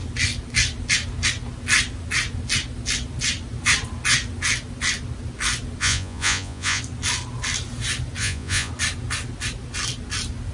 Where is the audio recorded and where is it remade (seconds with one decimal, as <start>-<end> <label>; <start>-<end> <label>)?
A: 0.0-5.8 recorded; 5.8-6.8 remade; 6.8-8.2 recorded; 8.2-8.7 remade; 8.7-10.5 recorded